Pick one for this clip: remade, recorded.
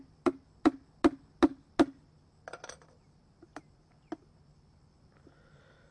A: recorded